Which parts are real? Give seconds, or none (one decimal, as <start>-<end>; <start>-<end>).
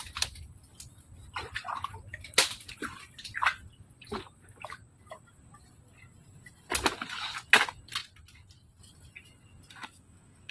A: 0.0-9.8